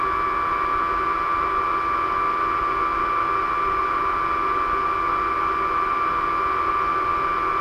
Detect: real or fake real